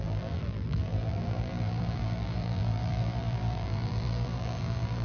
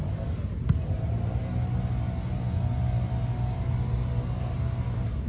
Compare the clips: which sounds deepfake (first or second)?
first